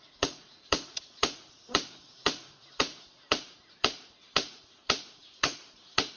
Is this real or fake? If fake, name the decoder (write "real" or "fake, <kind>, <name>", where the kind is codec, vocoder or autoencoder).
fake, vocoder, Vocos